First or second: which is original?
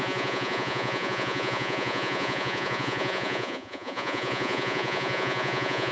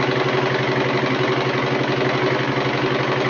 second